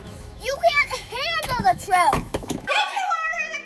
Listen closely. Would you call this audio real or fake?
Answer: fake